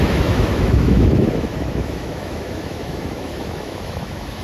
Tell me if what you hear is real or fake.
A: fake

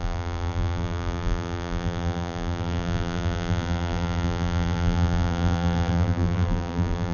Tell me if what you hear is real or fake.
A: fake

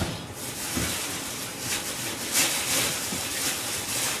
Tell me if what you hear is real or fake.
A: real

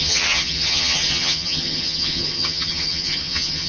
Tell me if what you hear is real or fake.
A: fake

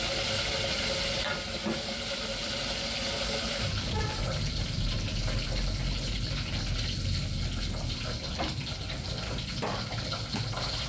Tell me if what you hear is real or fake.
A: real